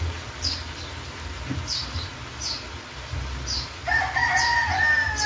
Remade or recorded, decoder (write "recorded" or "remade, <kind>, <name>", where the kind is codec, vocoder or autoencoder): recorded